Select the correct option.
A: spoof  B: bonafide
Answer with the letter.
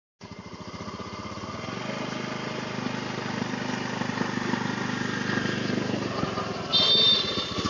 B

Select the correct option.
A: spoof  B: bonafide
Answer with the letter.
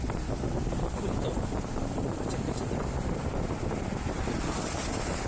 A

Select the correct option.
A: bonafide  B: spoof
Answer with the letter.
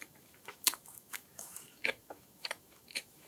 B